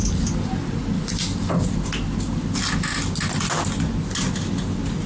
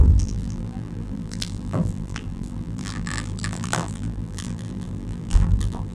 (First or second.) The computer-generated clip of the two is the second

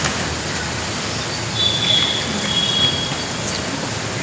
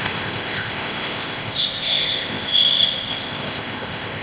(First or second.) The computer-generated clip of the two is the second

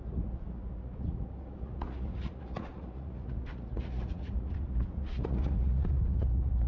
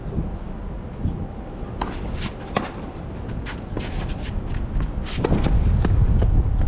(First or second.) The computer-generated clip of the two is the first